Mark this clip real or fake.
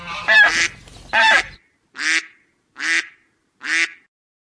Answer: real